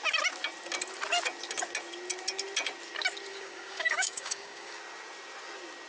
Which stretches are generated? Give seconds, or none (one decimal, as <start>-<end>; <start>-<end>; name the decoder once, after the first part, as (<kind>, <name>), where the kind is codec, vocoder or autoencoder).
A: 3.3-4.8 (codec, DAC)